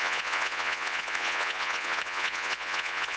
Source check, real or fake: fake